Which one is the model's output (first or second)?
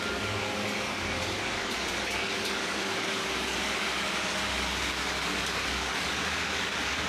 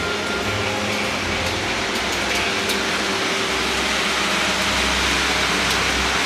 first